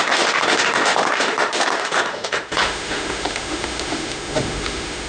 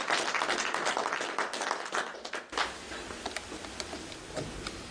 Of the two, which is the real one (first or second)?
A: second